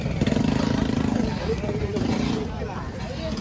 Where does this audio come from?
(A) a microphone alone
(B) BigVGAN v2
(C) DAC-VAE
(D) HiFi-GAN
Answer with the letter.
A